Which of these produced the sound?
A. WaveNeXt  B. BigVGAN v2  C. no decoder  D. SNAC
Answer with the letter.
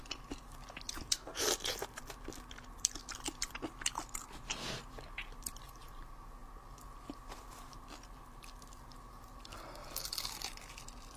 C